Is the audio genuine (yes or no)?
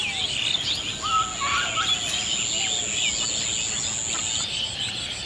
yes